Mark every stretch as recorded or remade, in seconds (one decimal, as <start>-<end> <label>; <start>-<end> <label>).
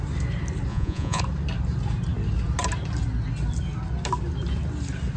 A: 0.0-0.7 recorded; 0.7-1.2 remade; 1.2-5.2 recorded